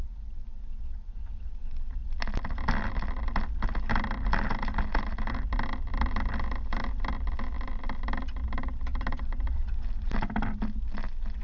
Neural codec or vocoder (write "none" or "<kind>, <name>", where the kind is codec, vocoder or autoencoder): none